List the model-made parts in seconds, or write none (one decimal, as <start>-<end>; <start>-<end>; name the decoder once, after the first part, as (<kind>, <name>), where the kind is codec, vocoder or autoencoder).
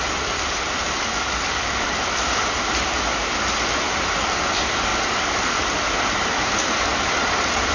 none